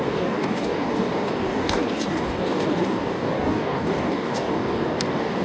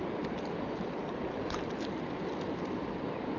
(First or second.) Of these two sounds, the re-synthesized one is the first